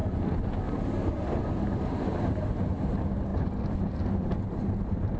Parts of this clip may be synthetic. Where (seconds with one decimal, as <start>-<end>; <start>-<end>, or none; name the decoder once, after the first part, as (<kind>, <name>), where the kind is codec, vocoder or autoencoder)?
none